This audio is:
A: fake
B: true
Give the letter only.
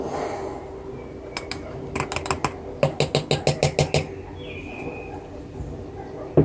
B